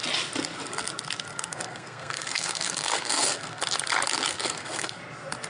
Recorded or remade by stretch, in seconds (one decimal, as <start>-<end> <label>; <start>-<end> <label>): 0.0-1.3 recorded; 1.3-3.6 remade; 3.6-4.3 recorded; 4.3-5.0 remade; 5.0-5.5 recorded